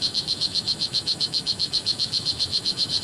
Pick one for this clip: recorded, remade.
remade